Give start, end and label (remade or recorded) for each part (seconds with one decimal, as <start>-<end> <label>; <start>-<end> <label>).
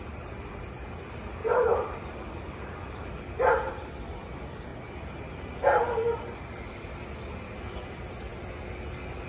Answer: 0.0-1.4 recorded; 1.4-2.7 remade; 2.7-9.3 recorded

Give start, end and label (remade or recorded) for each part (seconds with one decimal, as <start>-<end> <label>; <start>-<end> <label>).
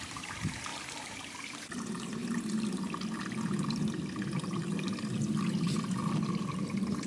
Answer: 0.0-2.2 remade; 2.2-6.5 recorded; 6.5-7.1 remade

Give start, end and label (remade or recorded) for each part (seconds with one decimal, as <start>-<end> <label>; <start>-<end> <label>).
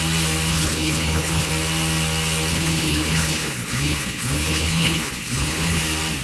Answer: 0.0-0.5 recorded; 0.5-1.5 remade; 1.5-2.5 recorded; 2.5-5.8 remade; 5.8-6.2 recorded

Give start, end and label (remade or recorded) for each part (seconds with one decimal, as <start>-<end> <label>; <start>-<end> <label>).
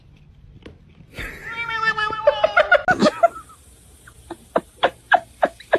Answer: 0.0-3.0 recorded; 3.0-5.8 remade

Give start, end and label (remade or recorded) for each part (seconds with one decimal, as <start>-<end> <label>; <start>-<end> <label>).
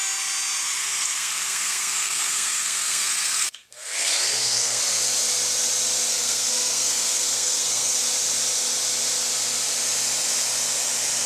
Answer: 0.0-0.8 recorded; 0.8-4.8 remade; 4.8-6.1 recorded; 6.1-8.0 remade; 8.0-11.3 recorded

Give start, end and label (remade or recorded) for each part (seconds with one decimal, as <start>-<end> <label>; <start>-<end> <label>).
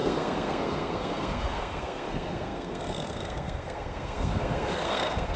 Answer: 0.0-5.4 remade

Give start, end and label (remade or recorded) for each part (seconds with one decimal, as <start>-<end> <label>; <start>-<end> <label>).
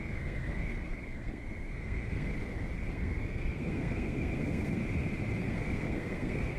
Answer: 0.0-2.3 remade; 2.3-2.9 recorded; 2.9-4.8 remade; 4.8-5.4 recorded; 5.4-6.6 remade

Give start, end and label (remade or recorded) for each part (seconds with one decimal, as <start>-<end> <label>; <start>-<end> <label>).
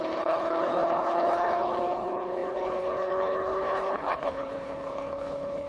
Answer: 0.0-5.7 remade